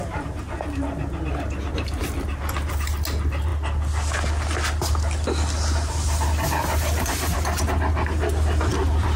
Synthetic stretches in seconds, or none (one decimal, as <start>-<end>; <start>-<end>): none